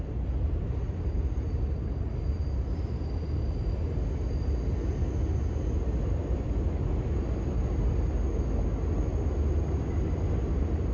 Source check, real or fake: real